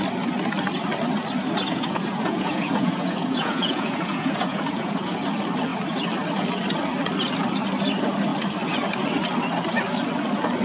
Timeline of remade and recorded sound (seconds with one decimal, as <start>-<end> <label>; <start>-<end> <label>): 0.0-1.7 recorded; 1.7-5.1 remade; 5.1-10.6 recorded